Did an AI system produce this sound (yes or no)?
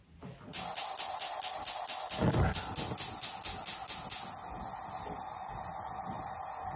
no